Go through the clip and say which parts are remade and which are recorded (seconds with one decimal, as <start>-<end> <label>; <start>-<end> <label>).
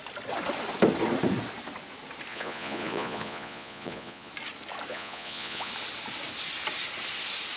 0.0-2.3 recorded; 2.3-4.3 remade; 4.3-4.9 recorded; 4.9-5.7 remade; 5.7-7.6 recorded